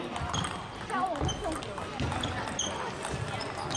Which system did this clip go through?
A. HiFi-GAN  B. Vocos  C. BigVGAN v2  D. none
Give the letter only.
D